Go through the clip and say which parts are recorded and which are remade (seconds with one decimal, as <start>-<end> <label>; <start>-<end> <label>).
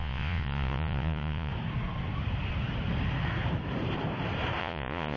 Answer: 0.0-1.5 remade; 1.5-4.6 recorded; 4.6-5.2 remade